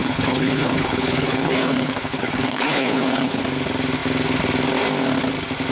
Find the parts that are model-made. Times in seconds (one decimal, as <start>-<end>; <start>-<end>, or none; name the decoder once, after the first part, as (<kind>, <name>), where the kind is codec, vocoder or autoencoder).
0.0-3.4 (codec, HILCodec)